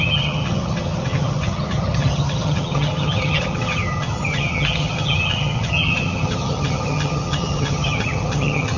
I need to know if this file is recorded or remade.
remade